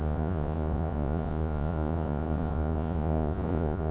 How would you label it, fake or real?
fake